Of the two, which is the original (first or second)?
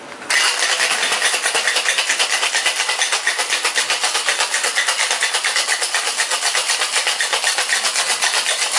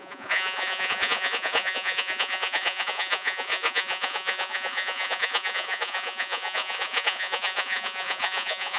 first